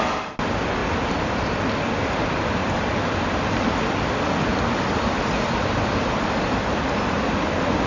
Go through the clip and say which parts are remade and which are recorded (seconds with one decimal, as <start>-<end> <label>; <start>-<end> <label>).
0.0-0.8 remade; 0.8-2.1 recorded; 2.1-7.9 remade

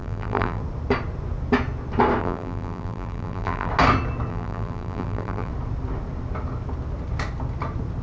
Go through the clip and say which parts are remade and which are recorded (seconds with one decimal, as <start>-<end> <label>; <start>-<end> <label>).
0.0-0.6 remade; 0.6-2.2 recorded; 2.2-3.7 remade; 3.7-4.3 recorded; 4.3-5.5 remade; 5.5-8.0 recorded

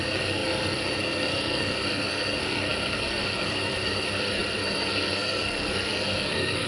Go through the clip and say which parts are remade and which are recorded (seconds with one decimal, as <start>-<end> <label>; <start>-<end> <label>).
0.0-6.7 remade

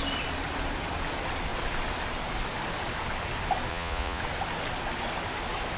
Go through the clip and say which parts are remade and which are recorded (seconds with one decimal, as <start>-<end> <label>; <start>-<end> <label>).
0.0-3.7 recorded; 3.7-4.2 remade; 4.2-5.8 recorded